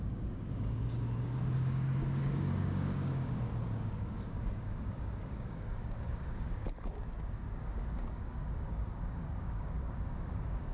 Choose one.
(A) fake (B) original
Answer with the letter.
A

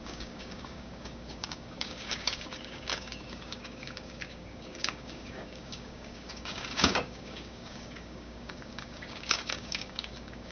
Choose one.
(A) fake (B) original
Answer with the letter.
A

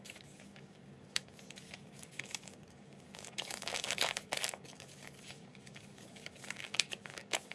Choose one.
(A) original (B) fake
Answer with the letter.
B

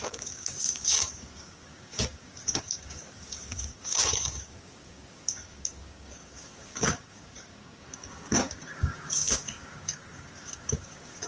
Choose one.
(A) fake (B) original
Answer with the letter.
A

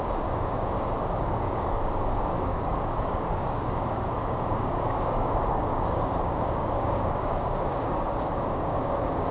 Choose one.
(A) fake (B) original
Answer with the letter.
A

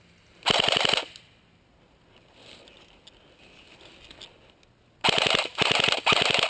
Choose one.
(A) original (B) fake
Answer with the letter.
A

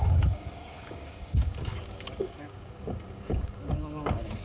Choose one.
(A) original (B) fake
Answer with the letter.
B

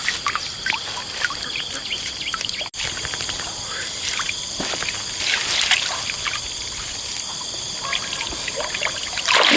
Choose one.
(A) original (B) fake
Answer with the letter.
A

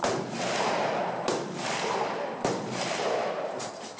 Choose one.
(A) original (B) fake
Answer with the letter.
A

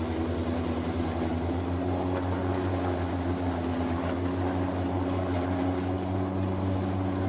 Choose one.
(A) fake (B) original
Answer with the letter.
B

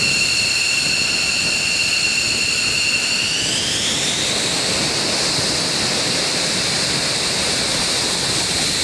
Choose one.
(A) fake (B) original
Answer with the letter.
B